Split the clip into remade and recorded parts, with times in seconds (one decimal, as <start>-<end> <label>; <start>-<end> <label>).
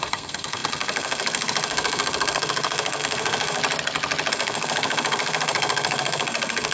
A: 0.0-3.6 remade; 3.6-4.3 recorded; 4.3-6.7 remade